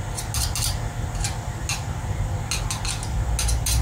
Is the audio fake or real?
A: real